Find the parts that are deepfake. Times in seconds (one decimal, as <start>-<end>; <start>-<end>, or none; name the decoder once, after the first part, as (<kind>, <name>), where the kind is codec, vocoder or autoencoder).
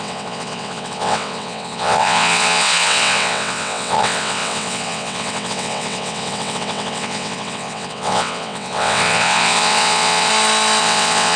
0.0-10.3 (vocoder, WaveNeXt); 10.8-11.4